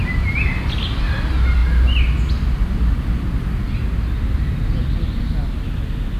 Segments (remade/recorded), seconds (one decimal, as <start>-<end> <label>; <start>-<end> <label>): 0.0-6.2 recorded